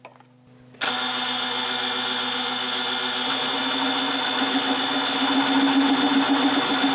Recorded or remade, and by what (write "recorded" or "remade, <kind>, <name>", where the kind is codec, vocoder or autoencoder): recorded